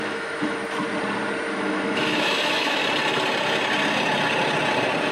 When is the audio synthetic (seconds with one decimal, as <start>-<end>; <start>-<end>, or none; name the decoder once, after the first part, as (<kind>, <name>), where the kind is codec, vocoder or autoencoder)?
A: 0.0-0.6 (autoencoder, DAC-VAE); 1.5-2.8